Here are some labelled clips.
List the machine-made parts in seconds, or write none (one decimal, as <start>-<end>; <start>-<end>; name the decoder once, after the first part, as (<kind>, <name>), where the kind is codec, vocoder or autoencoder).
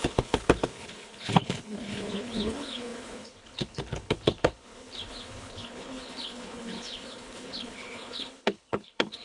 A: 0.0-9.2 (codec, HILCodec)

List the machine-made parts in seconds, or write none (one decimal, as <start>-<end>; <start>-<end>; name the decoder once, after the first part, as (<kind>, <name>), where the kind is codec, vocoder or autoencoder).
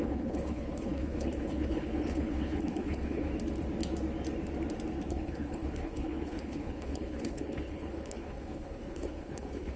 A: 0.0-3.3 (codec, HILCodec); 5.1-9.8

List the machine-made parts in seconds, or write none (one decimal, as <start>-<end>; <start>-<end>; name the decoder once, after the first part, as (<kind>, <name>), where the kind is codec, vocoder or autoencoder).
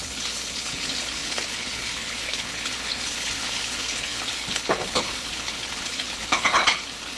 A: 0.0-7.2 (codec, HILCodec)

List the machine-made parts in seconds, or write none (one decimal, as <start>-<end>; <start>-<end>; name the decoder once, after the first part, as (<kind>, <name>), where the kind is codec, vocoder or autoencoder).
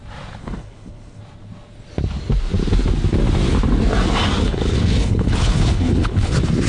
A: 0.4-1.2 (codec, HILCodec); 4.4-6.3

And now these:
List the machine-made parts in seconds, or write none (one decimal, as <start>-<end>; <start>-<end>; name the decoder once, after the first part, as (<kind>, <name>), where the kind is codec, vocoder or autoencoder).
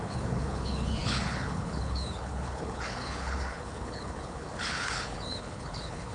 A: 0.0-6.1 (codec, HILCodec)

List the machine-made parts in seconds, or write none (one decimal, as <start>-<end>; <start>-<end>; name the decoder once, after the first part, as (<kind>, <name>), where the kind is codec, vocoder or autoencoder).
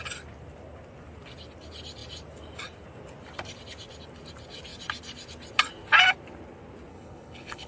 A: 6.9-7.7 (codec, HILCodec)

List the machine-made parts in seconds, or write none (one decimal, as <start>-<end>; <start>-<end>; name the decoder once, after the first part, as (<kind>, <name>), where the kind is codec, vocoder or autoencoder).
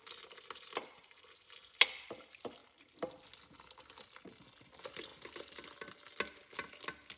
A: none